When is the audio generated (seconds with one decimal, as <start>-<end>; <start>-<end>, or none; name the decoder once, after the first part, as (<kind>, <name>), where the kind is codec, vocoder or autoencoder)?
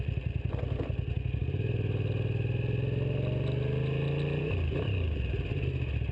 none